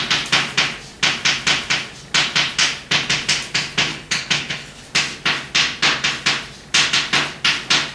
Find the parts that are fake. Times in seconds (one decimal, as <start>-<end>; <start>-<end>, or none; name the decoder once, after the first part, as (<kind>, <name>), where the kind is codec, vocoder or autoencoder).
3.9-4.8 (codec, HILCodec)